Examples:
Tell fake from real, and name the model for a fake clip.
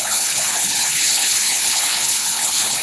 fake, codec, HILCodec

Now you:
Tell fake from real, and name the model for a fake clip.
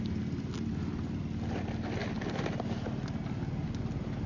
real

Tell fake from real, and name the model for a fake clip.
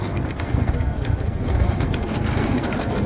fake, codec, SNAC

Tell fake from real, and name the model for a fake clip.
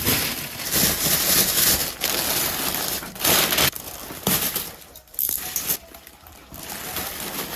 real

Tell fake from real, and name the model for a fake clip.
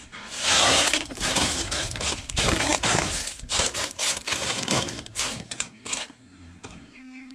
fake, codec, SNAC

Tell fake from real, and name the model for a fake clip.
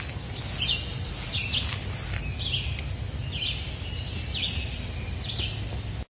real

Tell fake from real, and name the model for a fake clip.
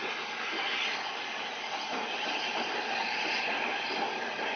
real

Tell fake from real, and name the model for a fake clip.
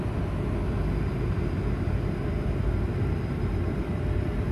real